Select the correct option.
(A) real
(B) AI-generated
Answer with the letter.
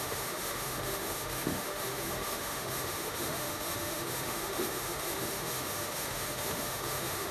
B